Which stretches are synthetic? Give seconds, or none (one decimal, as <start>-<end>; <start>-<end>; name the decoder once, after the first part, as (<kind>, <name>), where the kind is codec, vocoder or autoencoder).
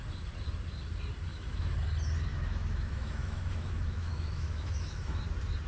1.3-1.8 (autoencoder, DAC-VAE); 2.3-5.2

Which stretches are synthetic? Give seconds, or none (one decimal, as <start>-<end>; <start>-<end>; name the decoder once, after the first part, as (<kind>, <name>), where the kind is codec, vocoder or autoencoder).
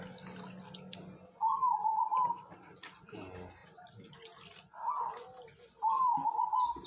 none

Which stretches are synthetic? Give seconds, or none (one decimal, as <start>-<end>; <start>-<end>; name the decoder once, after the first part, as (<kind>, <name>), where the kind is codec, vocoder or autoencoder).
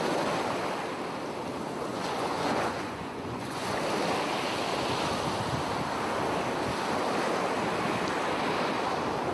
1.9-3.8 (vocoder, Vocos)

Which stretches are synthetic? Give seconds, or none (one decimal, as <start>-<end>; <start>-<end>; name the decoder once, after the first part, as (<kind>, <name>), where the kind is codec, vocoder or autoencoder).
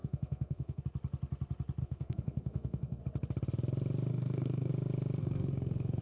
0.0-0.8 (codec, SNAC); 1.8-3.0; 4.1-4.7; 5.2-6.0